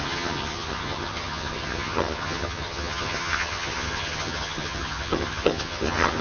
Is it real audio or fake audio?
fake